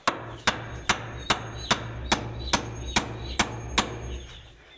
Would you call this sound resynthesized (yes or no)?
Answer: no